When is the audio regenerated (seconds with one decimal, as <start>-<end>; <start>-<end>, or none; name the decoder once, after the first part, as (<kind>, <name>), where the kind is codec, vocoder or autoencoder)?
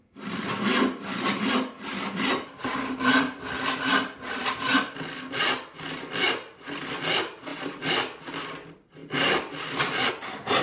7.5-8.2 (vocoder, BigVGAN v2)